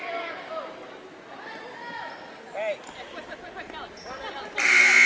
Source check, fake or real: real